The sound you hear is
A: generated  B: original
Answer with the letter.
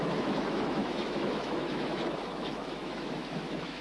A